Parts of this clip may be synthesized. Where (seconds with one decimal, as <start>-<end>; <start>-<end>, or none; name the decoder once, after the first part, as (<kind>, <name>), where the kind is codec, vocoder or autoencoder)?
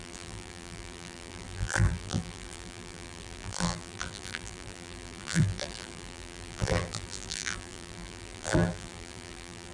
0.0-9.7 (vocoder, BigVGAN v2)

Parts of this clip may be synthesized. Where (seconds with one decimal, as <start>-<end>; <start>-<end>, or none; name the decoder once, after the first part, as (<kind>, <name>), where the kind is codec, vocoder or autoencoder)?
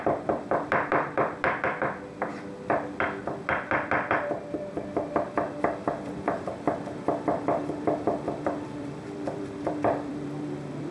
0.0-0.9 (vocoder, BigVGAN v2); 3.2-10.9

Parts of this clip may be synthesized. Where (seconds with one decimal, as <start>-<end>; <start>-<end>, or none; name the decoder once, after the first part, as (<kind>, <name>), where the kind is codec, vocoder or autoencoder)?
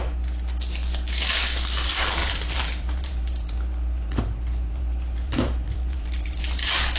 2.2-6.4 (vocoder, BigVGAN v2)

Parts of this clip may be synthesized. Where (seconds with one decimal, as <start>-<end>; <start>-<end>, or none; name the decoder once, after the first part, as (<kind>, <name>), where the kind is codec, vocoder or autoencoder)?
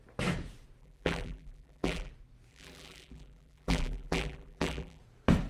0.8-2.1 (vocoder, BigVGAN v2); 2.5-5.0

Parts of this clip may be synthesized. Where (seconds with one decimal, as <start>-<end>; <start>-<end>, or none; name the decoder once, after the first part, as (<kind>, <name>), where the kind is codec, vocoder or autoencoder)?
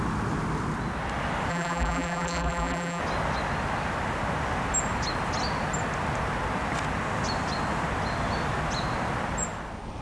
1.5-3.0 (vocoder, BigVGAN v2)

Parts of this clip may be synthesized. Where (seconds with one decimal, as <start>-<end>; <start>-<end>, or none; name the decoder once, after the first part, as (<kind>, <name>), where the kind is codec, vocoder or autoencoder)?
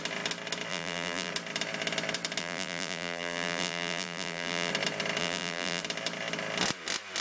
0.7-1.3 (vocoder, BigVGAN v2); 2.4-4.7; 5.2-5.8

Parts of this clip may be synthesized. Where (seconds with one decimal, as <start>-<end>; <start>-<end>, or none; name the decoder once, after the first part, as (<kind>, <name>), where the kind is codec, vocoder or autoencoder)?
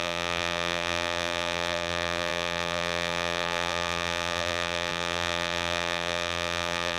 0.0-7.0 (vocoder, BigVGAN v2)